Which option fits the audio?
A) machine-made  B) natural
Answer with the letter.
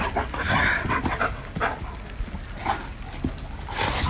B